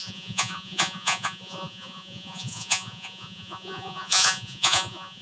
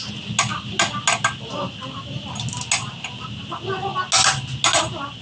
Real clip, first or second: second